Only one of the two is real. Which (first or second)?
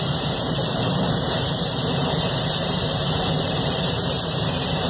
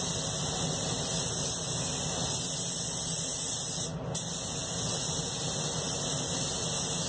second